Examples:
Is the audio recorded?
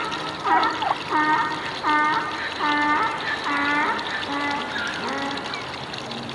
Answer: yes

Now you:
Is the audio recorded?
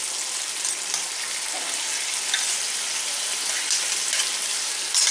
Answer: yes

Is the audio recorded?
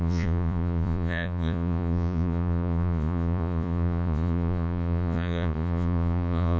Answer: no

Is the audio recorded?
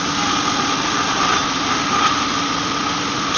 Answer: yes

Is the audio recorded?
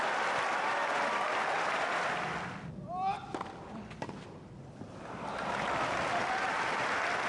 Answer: yes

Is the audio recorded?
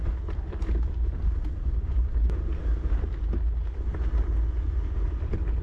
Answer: yes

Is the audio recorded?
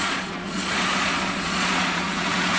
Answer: no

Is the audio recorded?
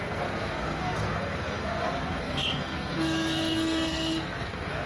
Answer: no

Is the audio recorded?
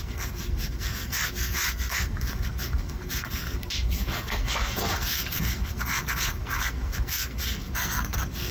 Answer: no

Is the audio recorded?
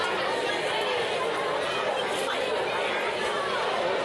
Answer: yes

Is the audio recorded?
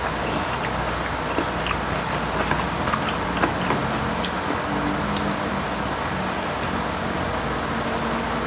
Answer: yes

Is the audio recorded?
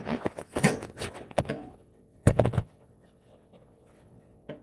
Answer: no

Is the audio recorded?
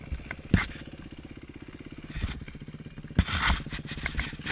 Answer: yes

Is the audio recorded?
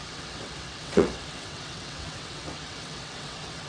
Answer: no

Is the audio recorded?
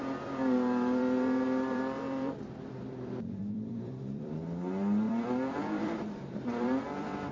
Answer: no